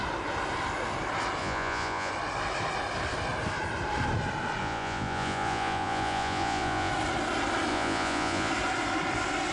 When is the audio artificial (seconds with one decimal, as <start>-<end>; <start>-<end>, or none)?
1.4-2.1; 4.6-6.9; 7.7-8.5